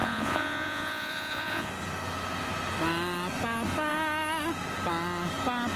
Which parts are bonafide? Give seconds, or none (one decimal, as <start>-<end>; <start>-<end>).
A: 1.7-5.8